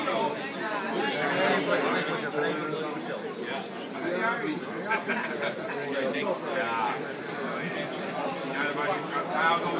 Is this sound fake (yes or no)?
no